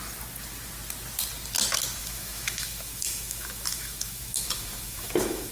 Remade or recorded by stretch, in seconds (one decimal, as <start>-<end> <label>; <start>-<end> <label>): 0.0-2.0 recorded; 2.0-5.5 remade